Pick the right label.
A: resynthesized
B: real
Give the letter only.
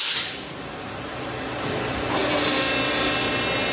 B